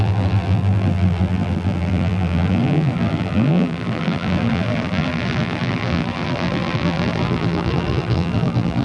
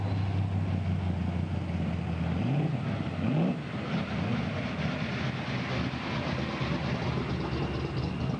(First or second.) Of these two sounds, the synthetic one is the first